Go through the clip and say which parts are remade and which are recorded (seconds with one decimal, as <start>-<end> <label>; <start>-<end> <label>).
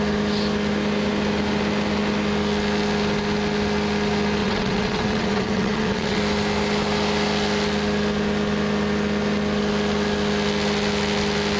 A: 0.0-4.4 recorded; 4.4-6.2 remade; 6.2-11.6 recorded